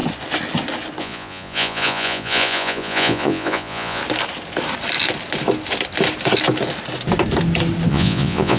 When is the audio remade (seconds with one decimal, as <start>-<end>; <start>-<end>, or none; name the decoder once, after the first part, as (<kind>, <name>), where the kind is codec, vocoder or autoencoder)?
1.0-4.0 (vocoder, Vocos); 7.9-8.6